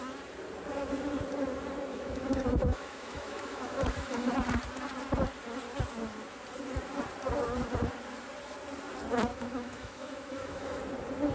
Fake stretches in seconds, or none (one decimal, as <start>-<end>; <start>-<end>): 1.9-4.3; 9.3-10.8

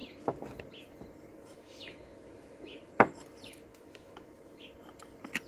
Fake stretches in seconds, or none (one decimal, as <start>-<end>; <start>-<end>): 1.3-2.9; 3.7-4.7

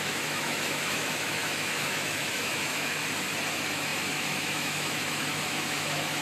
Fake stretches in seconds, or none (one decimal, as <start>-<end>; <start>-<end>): 0.0-3.0; 3.5-6.2

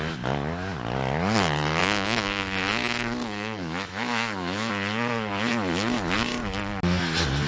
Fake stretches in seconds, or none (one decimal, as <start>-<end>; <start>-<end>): 1.8-4.7

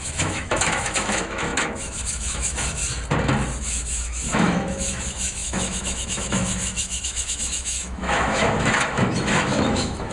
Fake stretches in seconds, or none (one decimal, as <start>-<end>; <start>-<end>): 0.0-2.8; 3.6-10.1

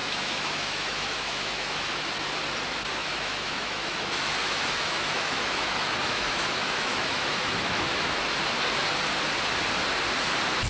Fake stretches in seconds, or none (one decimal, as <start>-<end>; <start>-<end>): 0.0-1.8; 3.0-8.2